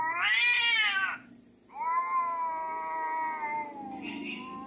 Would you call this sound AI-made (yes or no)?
no